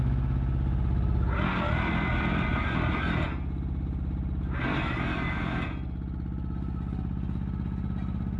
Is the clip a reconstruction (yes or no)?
no